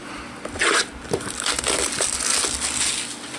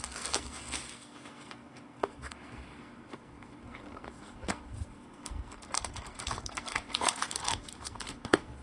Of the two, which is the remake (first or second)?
second